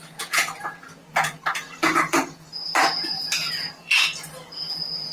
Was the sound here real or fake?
fake